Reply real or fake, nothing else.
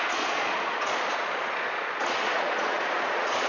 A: fake